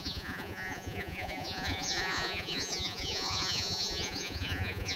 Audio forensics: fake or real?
fake